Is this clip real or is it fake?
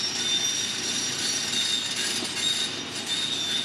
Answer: real